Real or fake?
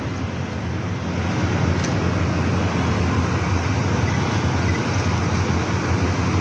real